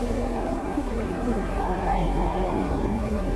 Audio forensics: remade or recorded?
remade